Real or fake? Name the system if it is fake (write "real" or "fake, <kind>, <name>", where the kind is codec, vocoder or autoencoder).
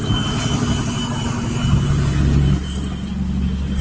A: real